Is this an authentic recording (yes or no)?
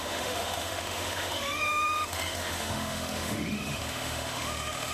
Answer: no